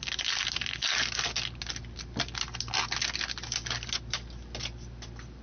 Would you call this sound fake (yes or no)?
no